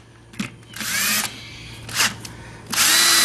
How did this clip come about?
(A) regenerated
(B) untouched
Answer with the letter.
B